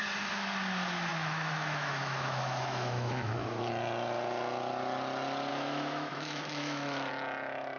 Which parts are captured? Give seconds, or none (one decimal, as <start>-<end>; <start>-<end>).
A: 0.0-1.1; 3.7-5.5; 7.1-7.8